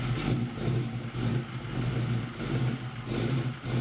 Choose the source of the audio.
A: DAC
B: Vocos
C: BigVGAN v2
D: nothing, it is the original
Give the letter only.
D